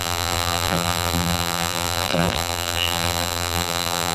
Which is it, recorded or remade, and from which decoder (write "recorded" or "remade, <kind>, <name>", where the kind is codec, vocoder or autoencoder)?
remade, vocoder, BigVGAN v2